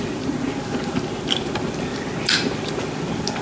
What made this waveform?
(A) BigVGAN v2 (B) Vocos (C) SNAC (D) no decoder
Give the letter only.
D